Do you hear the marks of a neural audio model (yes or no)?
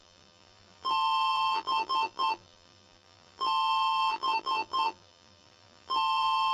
yes